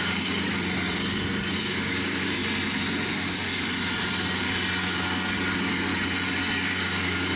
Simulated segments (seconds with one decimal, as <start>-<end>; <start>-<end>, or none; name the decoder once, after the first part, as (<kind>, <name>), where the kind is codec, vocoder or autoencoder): 0.0-0.5 (codec, DAC); 1.6-2.4; 6.6-7.4